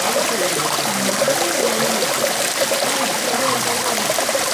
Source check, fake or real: real